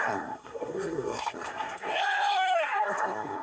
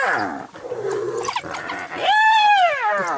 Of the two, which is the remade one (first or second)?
first